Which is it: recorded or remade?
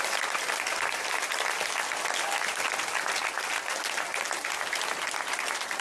recorded